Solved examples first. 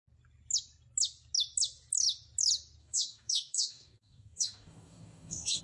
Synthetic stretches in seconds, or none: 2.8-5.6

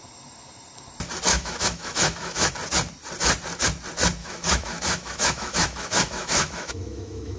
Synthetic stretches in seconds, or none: 1.3-2.5; 4.2-7.4

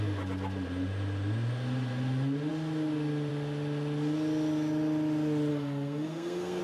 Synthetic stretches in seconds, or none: 5.5-6.6

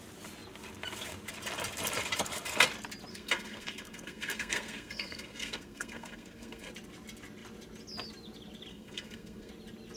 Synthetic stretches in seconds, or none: 3.1-6.7; 8.7-9.5

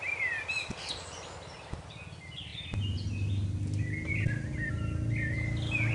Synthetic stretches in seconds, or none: none

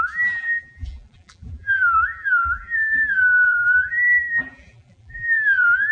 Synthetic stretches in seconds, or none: 0.0-5.9

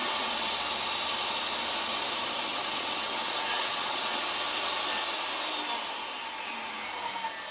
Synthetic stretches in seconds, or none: 0.0-0.5; 2.5-4.2